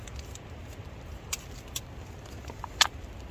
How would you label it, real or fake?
real